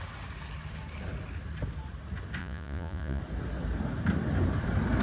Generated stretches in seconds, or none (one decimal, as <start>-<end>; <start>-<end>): 2.4-3.2